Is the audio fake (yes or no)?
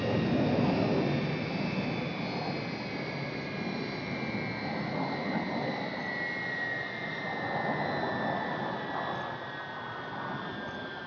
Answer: no